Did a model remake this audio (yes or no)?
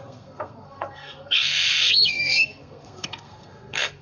yes